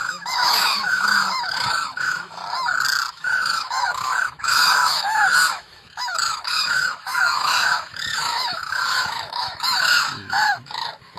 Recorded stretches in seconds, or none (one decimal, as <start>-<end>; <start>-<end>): 2.4-3.1